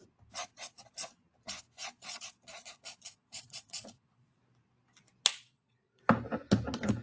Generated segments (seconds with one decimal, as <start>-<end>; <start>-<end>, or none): 2.0-4.4; 5.3-6.0